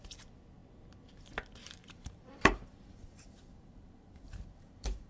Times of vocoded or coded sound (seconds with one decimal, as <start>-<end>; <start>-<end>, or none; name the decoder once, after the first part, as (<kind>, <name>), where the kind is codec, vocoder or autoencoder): 1.8-5.1 (vocoder, BigVGAN v2)